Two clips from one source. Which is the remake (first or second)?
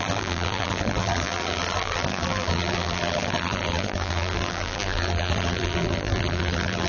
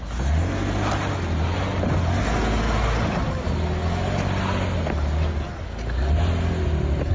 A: first